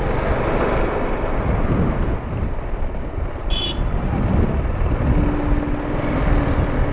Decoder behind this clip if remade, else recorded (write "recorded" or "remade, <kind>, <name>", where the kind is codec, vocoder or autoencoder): recorded